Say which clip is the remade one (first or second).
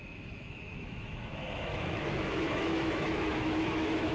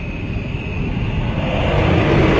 first